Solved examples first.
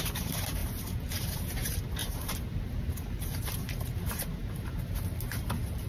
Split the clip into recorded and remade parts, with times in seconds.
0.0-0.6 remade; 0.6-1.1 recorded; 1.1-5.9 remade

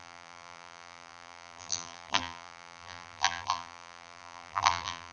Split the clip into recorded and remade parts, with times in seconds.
0.0-5.1 remade

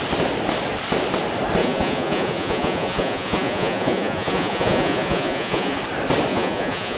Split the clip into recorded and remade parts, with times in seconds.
0.0-1.6 recorded; 1.6-5.8 remade; 5.8-6.3 recorded; 6.3-7.0 remade

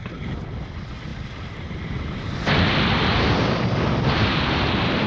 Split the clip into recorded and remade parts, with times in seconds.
0.0-5.1 recorded

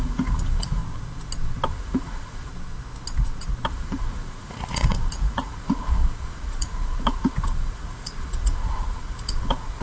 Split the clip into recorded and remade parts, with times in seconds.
0.0-0.8 remade; 0.8-1.7 recorded; 1.7-2.5 remade; 2.5-3.7 recorded; 3.7-9.8 remade

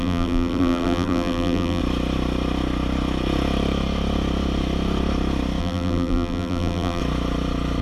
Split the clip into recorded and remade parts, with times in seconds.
0.0-1.8 remade; 1.8-5.6 recorded; 5.6-7.0 remade; 7.0-7.8 recorded

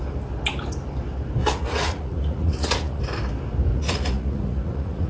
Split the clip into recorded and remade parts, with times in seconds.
0.0-1.4 recorded; 1.4-3.0 remade; 3.0-3.7 recorded; 3.7-5.1 remade